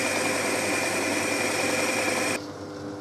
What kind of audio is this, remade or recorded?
recorded